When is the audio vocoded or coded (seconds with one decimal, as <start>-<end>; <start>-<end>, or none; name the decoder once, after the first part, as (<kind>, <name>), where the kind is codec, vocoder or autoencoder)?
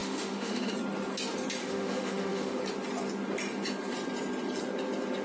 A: 0.0-0.7 (autoencoder, DAC-VAE); 1.6-2.6